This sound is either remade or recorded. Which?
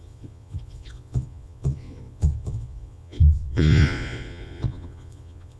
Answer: remade